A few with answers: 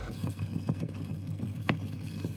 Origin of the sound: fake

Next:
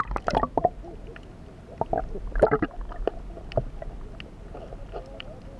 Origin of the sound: real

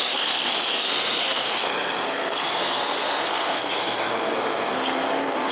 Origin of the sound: fake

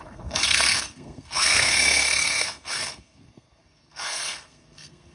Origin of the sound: fake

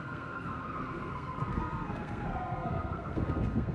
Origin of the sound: fake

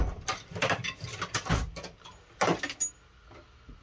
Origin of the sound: real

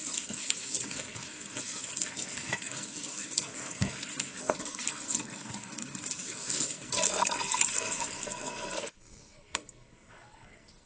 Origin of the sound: fake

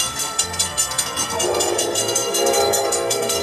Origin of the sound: fake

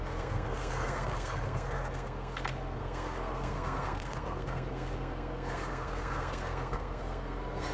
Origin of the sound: fake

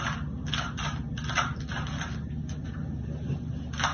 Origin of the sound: real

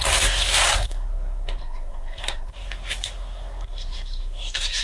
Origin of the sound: fake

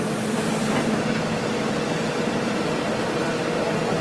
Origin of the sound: real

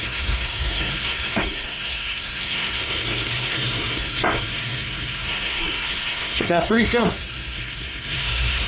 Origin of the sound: fake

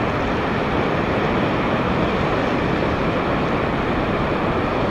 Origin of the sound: real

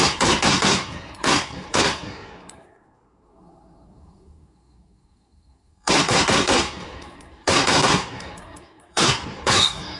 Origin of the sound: fake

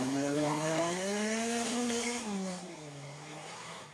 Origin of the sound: fake